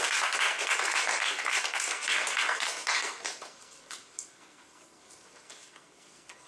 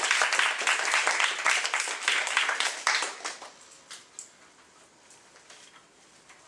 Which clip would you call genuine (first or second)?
second